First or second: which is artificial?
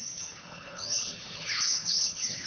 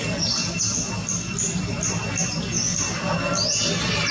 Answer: first